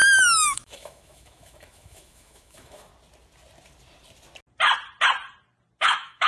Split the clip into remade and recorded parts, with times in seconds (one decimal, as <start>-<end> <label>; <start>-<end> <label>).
0.0-2.9 remade; 2.9-5.8 recorded; 5.8-6.3 remade